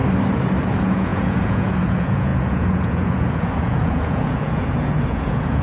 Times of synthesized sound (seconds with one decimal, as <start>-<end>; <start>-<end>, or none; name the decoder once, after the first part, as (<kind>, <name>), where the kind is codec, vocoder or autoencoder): 0.6-5.6 (vocoder, Vocos)